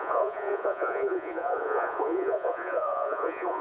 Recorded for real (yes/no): no